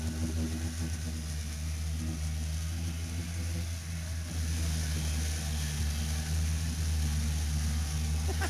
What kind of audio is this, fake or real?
real